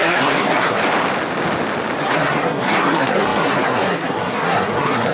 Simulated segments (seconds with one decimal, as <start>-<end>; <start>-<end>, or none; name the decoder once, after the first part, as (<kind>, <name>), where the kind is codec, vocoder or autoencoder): 0.0-0.8 (codec, SNAC); 2.0-5.1